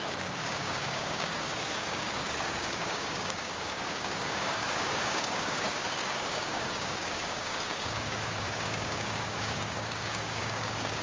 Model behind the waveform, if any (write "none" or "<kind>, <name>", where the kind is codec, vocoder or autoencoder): codec, DAC